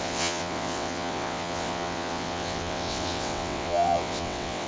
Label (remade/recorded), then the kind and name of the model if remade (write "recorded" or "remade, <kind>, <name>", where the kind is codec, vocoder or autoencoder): remade, vocoder, WaveNeXt